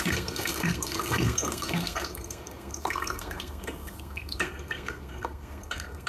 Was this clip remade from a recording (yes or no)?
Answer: yes